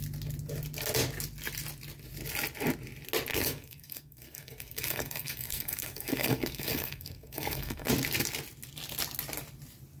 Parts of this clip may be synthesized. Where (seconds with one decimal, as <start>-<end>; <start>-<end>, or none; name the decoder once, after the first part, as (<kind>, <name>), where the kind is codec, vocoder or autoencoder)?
3.3-7.9 (codec, SNAC)